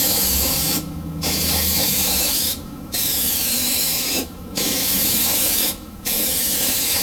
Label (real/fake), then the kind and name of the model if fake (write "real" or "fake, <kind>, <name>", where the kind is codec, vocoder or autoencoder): fake, autoencoder, DAC-VAE